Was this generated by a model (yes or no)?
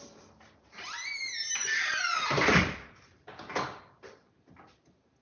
no